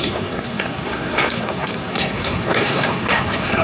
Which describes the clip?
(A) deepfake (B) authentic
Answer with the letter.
A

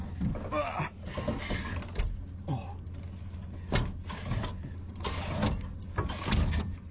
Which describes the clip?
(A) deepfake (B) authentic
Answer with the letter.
B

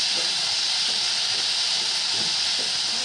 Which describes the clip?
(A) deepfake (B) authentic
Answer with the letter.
B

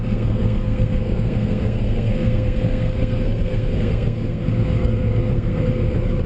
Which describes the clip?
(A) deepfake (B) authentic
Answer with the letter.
A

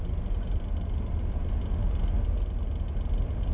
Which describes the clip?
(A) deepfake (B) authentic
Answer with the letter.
B